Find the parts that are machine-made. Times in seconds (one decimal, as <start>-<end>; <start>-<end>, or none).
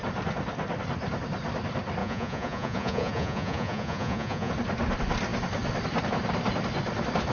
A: 2.0-4.5